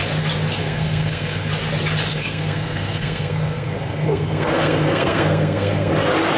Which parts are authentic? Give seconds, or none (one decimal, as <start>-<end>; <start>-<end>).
0.0-0.6; 1.5-2.1; 5.9-6.4